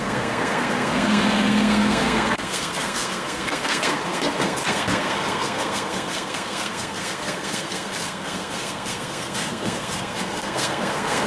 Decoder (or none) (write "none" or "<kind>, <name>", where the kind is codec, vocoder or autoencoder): codec, SNAC